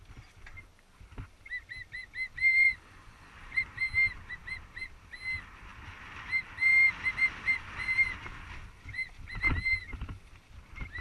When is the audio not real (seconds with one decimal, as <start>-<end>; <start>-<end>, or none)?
2.6-3.6